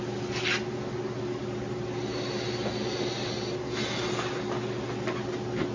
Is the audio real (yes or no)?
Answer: yes